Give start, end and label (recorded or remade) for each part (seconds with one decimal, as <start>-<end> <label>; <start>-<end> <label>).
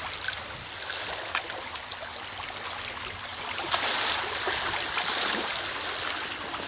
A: 0.0-6.7 recorded